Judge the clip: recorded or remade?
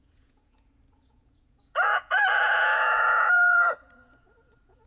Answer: remade